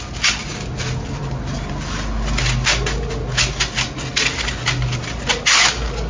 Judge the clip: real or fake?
real